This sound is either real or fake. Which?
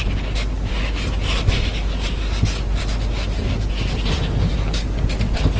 real